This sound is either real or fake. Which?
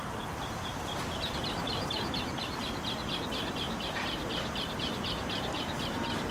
fake